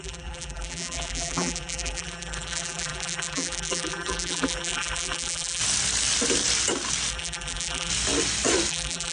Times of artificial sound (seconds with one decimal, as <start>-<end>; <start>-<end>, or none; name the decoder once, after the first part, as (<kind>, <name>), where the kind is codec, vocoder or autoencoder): 0.0-5.6 (vocoder, BigVGAN v2); 7.1-7.9; 8.7-9.1